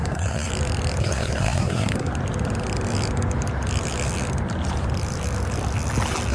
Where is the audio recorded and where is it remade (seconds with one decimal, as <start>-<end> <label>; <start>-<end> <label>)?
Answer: 0.0-0.5 remade; 0.5-1.0 recorded; 1.0-2.1 remade; 2.1-6.3 recorded